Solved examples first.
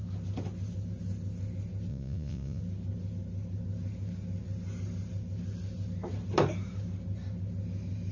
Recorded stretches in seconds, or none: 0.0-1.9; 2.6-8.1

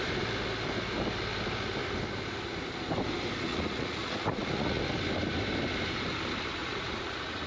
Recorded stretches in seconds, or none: 0.0-3.5; 4.8-6.6

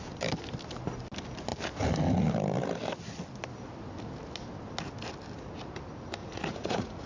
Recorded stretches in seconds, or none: 0.0-6.2